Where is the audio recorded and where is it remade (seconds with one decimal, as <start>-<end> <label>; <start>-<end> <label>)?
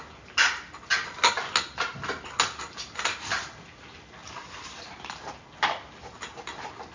0.0-6.9 recorded